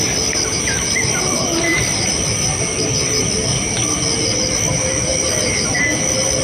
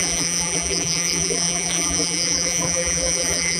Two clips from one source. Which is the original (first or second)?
first